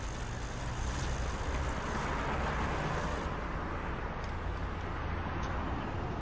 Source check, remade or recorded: recorded